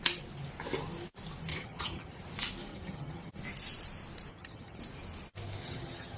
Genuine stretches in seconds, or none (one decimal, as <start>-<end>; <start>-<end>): 0.0-1.5; 2.2-2.7; 3.3-4.3; 4.8-5.6